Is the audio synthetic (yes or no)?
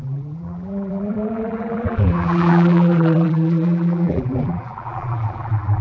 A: yes